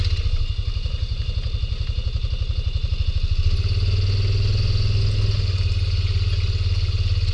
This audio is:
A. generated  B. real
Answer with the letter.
B